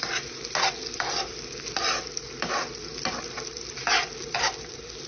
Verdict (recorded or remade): recorded